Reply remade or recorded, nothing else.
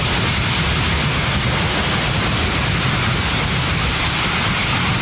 recorded